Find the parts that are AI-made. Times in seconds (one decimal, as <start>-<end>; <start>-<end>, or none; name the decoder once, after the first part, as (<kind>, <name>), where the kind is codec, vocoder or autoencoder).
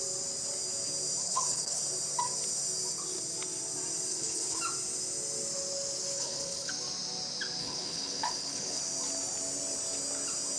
1.2-1.8 (codec, HILCodec); 4.1-4.6; 6.1-6.7; 7.6-8.8